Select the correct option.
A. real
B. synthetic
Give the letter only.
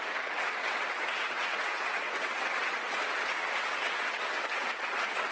B